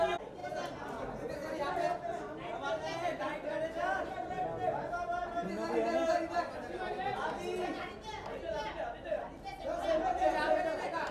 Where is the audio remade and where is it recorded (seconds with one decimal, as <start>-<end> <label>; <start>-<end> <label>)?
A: 0.0-11.1 recorded